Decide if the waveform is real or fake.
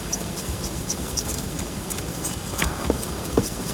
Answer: fake